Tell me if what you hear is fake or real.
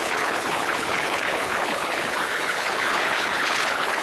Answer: fake